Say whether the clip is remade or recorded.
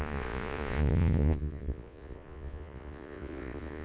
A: remade